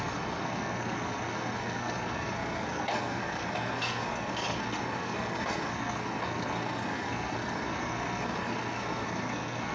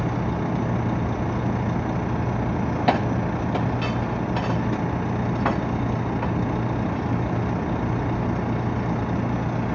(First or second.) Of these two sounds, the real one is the second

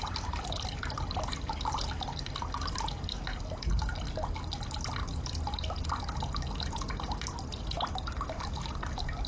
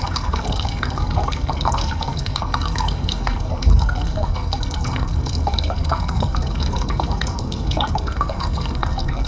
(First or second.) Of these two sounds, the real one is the first